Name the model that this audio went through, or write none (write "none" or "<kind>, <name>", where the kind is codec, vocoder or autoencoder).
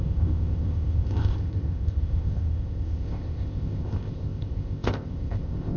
codec, ZipCodec